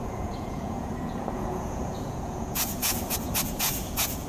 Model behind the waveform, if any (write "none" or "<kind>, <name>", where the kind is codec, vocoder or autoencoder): vocoder, Vocos